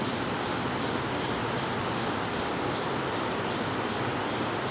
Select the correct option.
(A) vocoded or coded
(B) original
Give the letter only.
B